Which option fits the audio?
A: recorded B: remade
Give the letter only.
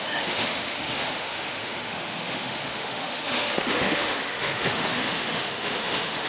B